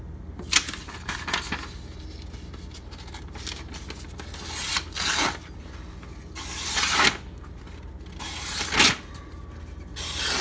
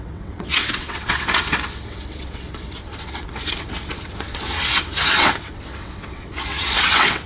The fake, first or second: second